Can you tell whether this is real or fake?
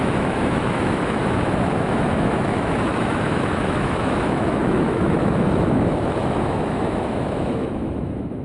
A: fake